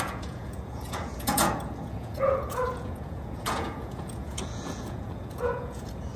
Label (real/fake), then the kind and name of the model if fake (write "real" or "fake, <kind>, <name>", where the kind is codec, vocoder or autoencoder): fake, vocoder, Vocos